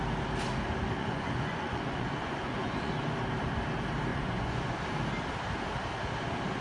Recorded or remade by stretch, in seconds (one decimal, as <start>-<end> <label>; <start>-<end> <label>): 0.0-1.0 recorded; 1.0-2.9 remade; 2.9-4.1 recorded; 4.1-4.8 remade; 4.8-6.6 recorded